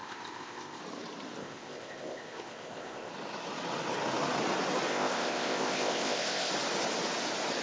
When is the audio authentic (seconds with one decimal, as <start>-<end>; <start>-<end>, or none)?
0.8-1.4; 3.1-4.9; 6.5-7.6